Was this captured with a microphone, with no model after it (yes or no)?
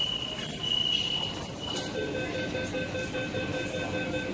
yes